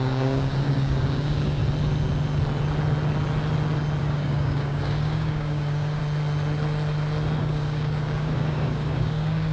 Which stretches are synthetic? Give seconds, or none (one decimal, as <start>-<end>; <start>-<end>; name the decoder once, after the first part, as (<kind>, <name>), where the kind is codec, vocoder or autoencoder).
0.0-1.6 (codec, DAC); 4.0-6.0; 7.4-9.5